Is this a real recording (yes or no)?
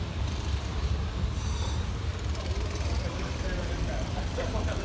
no